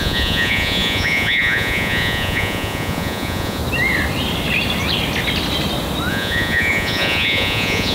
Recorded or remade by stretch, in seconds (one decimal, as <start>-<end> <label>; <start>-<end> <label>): 0.0-3.6 remade; 3.6-6.1 recorded; 6.1-7.9 remade

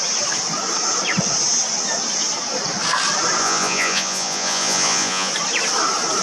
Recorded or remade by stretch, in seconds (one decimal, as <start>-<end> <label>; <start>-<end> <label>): 0.0-3.4 recorded; 3.4-5.3 remade; 5.3-6.2 recorded

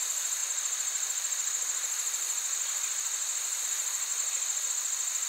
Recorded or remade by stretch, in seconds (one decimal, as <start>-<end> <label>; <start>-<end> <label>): 0.0-5.3 recorded

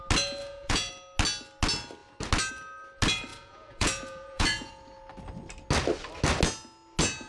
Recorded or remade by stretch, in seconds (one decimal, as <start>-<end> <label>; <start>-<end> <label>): 0.0-0.4 recorded; 0.4-0.9 remade; 0.9-3.3 recorded; 3.3-4.7 remade; 4.7-7.3 recorded